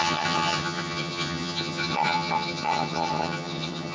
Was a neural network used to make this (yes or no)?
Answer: yes